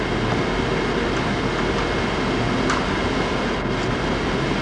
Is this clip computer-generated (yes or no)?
no